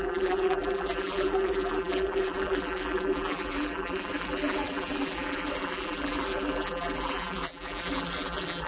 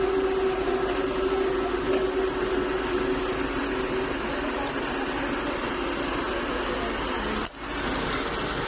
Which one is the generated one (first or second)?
first